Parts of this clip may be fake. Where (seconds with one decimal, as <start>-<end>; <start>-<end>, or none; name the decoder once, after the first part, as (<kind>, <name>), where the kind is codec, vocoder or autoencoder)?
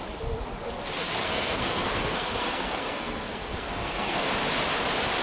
1.2-4.3 (codec, SNAC)